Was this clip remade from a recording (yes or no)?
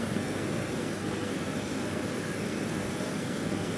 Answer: yes